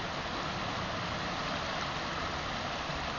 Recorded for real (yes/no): yes